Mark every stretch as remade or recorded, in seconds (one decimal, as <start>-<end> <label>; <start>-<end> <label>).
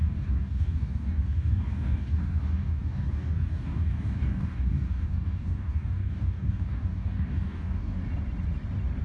0.0-8.0 remade; 8.0-9.0 recorded